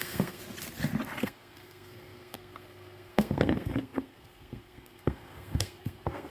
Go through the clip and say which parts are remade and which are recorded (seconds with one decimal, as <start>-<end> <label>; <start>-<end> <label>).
0.0-0.4 remade; 0.4-1.2 recorded; 1.2-6.3 remade